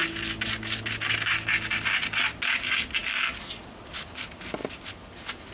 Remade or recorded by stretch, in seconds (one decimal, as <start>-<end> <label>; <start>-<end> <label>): 0.0-5.5 recorded

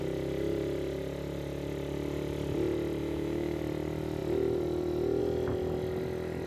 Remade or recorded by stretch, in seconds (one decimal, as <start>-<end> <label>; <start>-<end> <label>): 0.0-3.0 recorded; 3.0-3.6 remade; 3.6-6.5 recorded

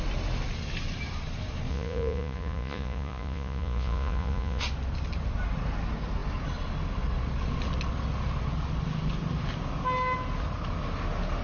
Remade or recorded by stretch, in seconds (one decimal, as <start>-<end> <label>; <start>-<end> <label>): 0.0-1.7 recorded; 1.7-4.6 remade; 4.6-11.4 recorded

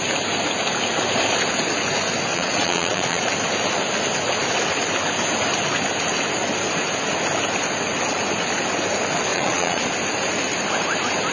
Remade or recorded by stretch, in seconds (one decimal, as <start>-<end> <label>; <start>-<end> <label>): 0.0-2.3 recorded; 2.3-3.3 remade; 3.3-9.3 recorded; 9.3-9.8 remade; 9.8-11.3 recorded

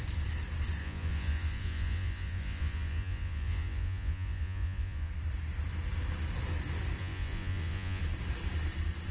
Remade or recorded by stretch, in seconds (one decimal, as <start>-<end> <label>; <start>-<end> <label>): 0.0-0.8 recorded; 0.8-5.1 remade; 5.1-7.0 recorded; 7.0-8.0 remade; 8.0-9.1 recorded

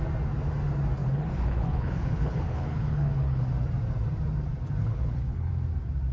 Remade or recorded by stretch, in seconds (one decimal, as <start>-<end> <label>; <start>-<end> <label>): 0.0-1.0 recorded; 1.0-3.4 remade; 3.4-4.8 recorded; 4.8-5.5 remade; 5.5-6.1 recorded

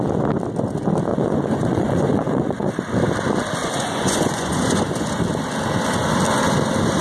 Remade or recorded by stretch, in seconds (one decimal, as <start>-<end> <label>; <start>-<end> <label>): 0.0-1.1 recorded; 1.1-2.7 remade; 2.7-3.6 recorded; 3.6-5.1 remade; 5.1-7.0 recorded

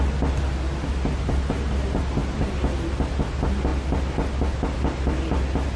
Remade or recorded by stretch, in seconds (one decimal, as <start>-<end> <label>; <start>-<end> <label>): 0.0-5.8 recorded